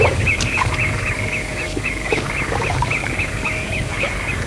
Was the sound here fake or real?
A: fake